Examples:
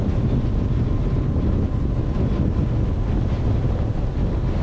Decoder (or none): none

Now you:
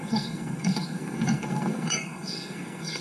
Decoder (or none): codec, SNAC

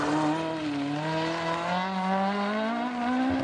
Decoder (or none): none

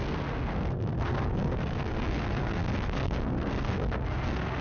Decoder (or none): codec, SNAC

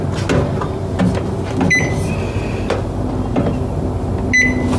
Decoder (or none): none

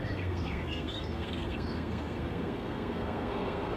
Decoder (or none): codec, SNAC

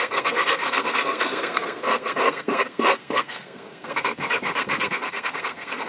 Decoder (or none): codec, SNAC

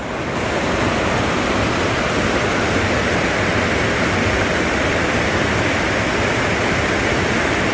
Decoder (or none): none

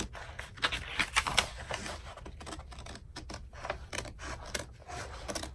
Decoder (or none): none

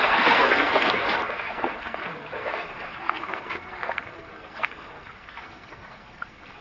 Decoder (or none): codec, SNAC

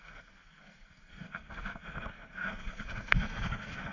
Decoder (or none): codec, SNAC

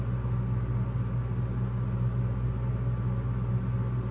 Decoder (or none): none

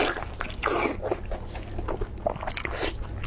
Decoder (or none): none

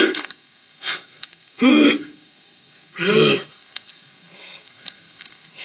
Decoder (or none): codec, SNAC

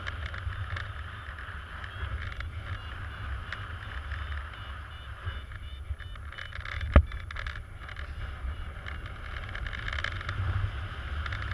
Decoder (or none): none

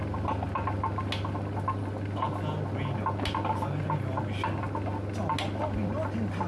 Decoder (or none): none